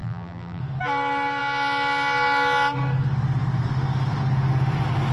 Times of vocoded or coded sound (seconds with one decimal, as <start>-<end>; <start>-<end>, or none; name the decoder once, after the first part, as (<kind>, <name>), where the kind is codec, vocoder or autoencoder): 0.0-0.6 (vocoder, BigVGAN v2)